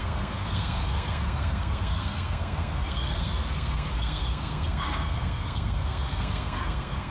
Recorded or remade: remade